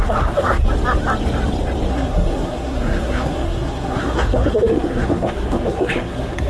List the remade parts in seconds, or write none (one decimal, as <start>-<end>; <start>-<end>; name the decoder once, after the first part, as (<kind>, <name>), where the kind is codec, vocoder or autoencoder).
0.0-0.6 (codec, SNAC); 1.9-6.5